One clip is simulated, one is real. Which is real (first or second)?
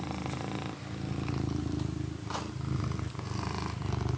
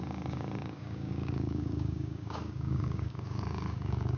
first